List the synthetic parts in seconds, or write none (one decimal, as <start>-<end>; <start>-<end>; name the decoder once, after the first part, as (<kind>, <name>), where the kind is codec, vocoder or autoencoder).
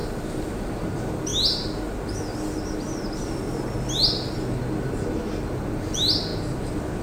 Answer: 0.6-1.3 (vocoder, BigVGAN v2); 4.6-6.3